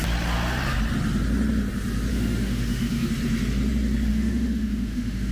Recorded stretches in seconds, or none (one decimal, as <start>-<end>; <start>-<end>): 0.0-2.1; 3.1-4.1